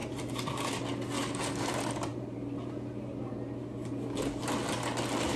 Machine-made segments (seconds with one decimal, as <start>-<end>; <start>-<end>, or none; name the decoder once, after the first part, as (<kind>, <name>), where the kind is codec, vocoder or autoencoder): none